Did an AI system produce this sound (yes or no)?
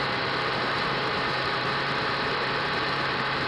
yes